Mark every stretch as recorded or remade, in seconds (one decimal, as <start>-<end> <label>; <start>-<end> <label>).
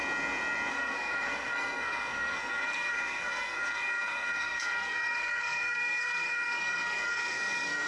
0.0-0.7 recorded; 0.7-7.9 remade